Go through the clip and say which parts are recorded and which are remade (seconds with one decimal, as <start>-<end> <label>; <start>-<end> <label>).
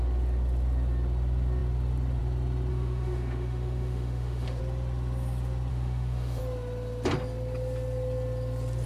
0.0-2.7 recorded; 2.7-4.6 remade; 4.6-5.7 recorded; 5.7-6.4 remade; 6.4-8.9 recorded